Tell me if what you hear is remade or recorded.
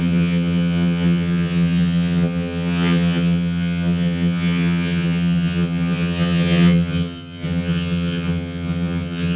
remade